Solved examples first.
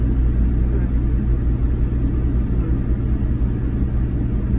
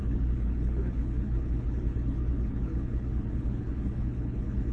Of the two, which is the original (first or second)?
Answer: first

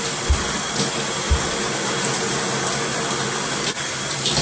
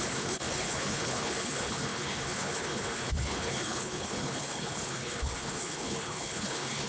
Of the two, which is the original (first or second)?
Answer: first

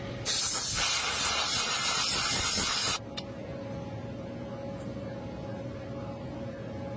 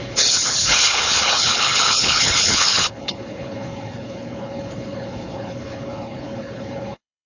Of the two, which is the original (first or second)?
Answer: first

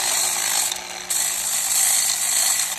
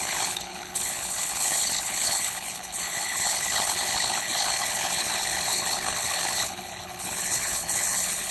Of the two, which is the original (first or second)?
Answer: first